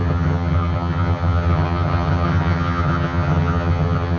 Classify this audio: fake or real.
fake